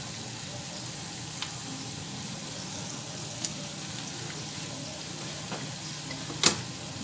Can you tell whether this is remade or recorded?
recorded